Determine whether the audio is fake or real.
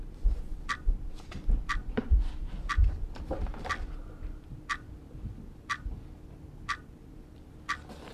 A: real